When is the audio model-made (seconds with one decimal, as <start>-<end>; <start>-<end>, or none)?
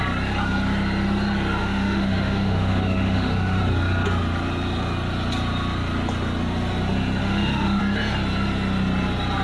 1.6-3.6; 7.2-7.8